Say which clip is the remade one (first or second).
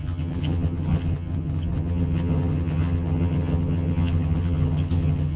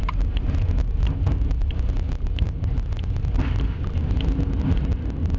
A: first